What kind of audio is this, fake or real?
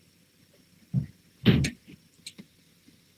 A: real